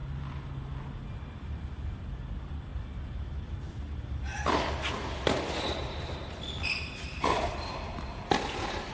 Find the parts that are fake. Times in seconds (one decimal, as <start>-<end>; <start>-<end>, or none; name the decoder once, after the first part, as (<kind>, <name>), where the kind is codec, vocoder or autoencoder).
none